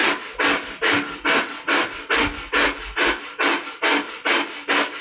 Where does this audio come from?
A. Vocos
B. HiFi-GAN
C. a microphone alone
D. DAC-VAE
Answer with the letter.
C